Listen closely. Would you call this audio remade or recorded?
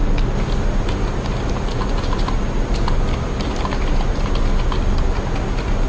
recorded